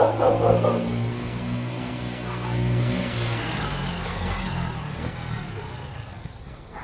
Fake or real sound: fake